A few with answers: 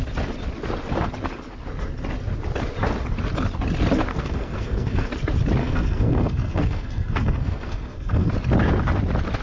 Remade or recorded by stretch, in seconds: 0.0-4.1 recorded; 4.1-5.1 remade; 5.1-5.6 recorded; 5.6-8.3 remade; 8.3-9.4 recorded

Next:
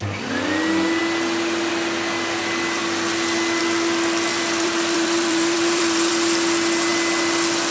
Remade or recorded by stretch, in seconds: 0.0-4.3 recorded; 4.3-6.1 remade; 6.1-7.7 recorded

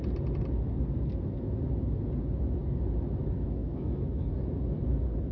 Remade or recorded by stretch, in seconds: 0.0-3.6 recorded; 3.6-4.2 remade; 4.2-5.3 recorded

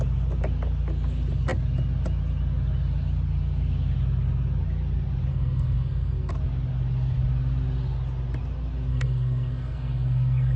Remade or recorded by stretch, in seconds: 0.0-5.3 recorded; 5.3-6.3 remade; 6.3-8.9 recorded; 8.9-10.6 remade

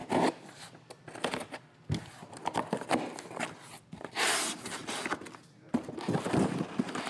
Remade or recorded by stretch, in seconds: 0.0-7.1 recorded

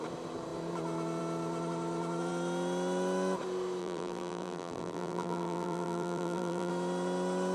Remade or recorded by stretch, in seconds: 0.0-3.8 recorded; 3.8-6.7 remade; 6.7-7.5 recorded